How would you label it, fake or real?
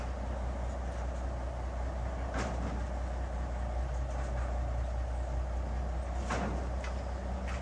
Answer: real